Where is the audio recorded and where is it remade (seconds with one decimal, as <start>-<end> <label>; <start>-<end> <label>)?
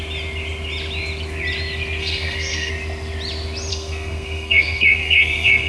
0.0-2.0 recorded; 2.0-2.7 remade; 2.7-3.7 recorded; 3.7-5.7 remade